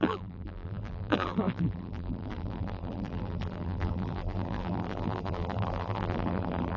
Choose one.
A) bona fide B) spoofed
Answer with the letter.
B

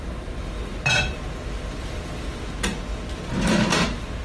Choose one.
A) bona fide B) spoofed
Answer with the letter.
A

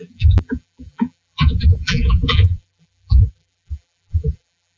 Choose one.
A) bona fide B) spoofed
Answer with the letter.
B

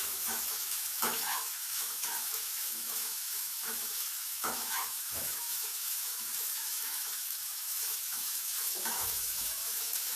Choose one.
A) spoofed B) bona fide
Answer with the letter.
A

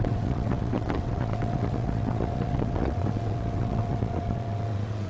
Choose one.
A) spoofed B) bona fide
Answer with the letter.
A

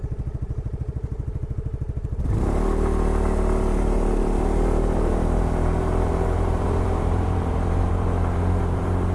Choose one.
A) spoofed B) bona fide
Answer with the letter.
A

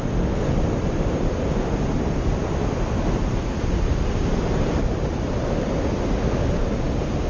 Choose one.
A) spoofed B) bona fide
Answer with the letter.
B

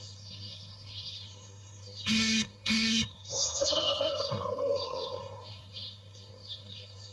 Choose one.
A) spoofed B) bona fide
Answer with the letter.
A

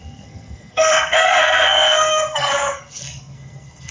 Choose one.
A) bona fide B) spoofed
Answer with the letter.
B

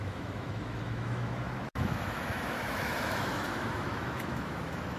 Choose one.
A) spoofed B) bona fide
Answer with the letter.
A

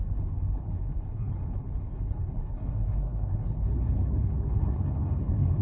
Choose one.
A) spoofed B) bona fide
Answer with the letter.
A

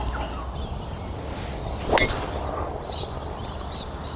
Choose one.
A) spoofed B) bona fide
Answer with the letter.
B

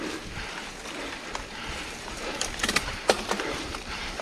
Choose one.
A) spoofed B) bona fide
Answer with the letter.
A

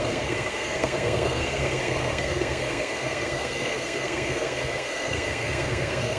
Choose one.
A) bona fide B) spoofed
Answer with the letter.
B